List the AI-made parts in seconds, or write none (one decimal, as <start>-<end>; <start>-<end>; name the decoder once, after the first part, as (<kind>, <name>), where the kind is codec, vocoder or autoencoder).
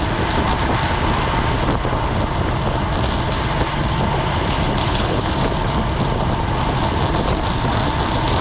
4.8-5.3 (codec, HILCodec)